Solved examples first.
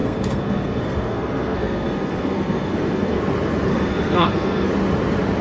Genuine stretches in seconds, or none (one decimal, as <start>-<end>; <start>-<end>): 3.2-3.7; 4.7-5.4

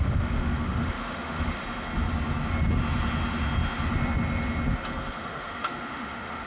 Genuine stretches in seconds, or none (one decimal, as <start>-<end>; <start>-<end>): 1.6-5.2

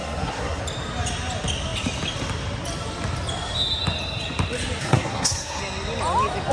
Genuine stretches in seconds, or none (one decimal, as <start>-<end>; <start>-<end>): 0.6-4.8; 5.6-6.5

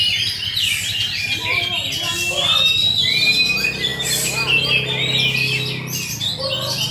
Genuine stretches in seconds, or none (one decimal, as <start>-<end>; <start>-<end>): 0.0-6.9

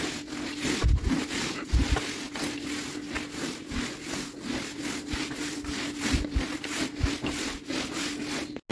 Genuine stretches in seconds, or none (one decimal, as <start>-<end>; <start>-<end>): 0.0-8.7

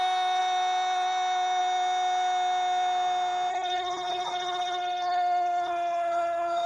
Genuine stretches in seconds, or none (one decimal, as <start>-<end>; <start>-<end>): 0.0-3.5